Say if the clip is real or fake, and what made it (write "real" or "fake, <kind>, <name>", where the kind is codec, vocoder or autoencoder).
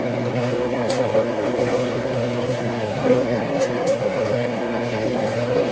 fake, codec, SNAC